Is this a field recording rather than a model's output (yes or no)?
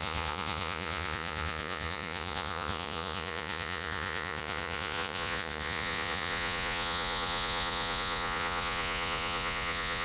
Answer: no